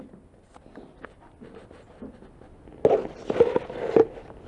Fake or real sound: real